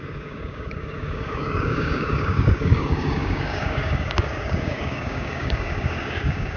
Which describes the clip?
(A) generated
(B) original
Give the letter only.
A